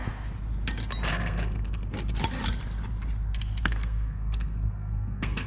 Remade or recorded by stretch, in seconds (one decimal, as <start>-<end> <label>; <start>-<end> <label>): 0.0-1.1 recorded; 1.1-1.8 remade; 1.8-3.6 recorded; 3.6-5.5 remade